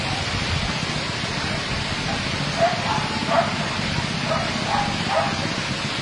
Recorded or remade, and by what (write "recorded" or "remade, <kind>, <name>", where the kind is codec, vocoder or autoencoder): recorded